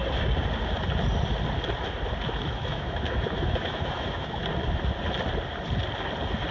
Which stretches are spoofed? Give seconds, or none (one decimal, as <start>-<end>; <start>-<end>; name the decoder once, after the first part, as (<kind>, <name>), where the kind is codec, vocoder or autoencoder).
2.4-4.4 (autoencoder, DAC-VAE)